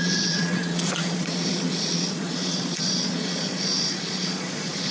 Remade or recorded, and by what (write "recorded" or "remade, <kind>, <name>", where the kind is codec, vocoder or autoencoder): remade, vocoder, Vocos